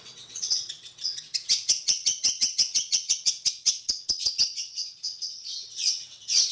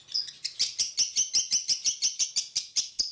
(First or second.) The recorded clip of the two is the second